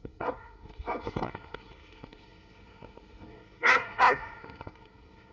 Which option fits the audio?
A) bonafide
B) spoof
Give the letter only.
B